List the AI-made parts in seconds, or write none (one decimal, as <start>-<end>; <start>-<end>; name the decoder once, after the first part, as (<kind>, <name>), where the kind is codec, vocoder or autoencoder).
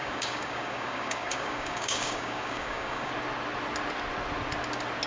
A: 0.0-3.1 (codec, DAC)